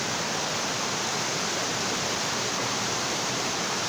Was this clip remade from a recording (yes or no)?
yes